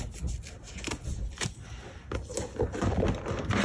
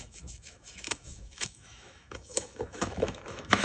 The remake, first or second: second